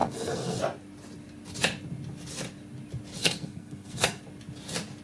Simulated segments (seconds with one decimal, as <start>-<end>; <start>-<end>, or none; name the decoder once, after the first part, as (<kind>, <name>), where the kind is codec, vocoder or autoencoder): 0.0-0.6 (codec, SNAC); 3.2-4.2